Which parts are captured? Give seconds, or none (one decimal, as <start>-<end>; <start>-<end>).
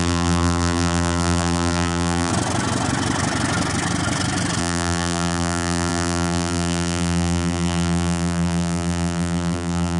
2.3-4.6